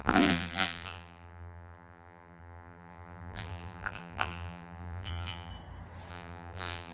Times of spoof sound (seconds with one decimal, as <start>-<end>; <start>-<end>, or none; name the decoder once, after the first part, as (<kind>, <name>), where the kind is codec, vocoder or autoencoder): 0.0-5.5 (vocoder, BigVGAN v2); 6.1-6.9